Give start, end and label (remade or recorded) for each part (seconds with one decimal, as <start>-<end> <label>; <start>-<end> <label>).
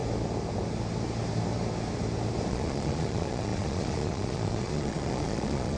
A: 0.0-2.5 recorded; 2.5-5.8 remade